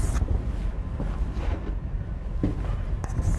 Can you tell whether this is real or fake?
real